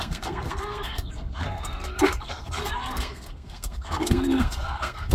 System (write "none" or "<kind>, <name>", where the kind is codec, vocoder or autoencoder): codec, SNAC